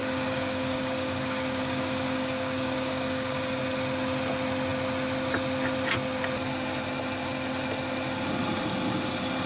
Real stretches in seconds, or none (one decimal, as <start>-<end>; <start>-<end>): 3.6-9.5